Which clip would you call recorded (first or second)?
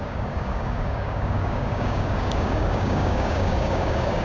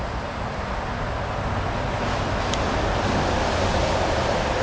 second